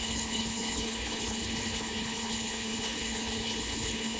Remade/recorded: remade